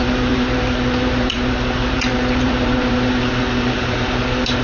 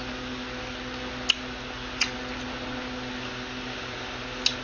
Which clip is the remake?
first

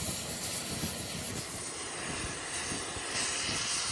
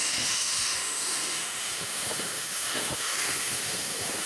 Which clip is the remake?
second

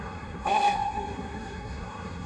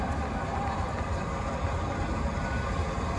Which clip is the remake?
first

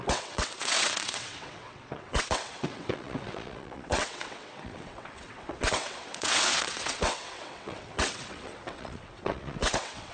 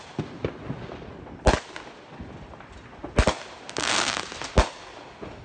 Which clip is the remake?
first